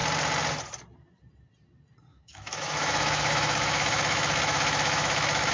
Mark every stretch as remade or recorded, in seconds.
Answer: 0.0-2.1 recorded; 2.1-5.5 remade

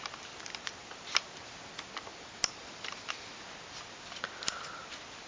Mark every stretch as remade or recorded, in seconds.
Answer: 0.0-5.3 recorded

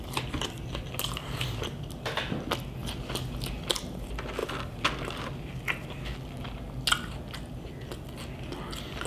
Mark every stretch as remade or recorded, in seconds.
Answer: 0.0-9.1 recorded

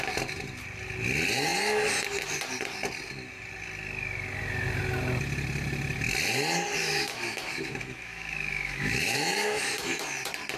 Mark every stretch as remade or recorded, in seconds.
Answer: 0.0-6.8 recorded; 6.8-10.0 remade; 10.0-10.6 recorded

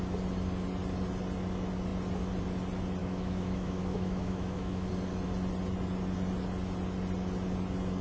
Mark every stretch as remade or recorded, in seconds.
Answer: 0.0-3.0 recorded; 3.0-4.9 remade; 4.9-8.0 recorded

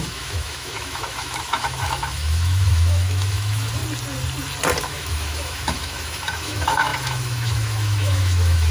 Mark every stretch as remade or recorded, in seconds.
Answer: 0.0-3.8 remade; 3.8-4.8 recorded; 4.8-8.7 remade

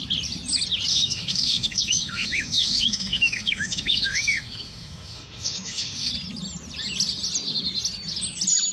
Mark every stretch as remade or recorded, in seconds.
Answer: 0.0-0.9 recorded; 0.9-6.1 remade; 6.1-8.7 recorded

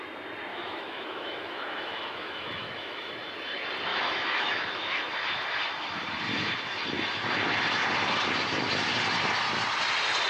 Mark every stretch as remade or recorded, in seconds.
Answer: 0.0-0.5 recorded; 0.5-3.1 remade; 3.1-3.9 recorded; 3.9-5.0 remade; 5.0-10.3 recorded